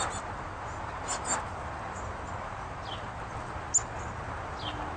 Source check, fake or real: real